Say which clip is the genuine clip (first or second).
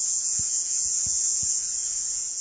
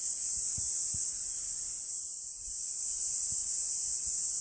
second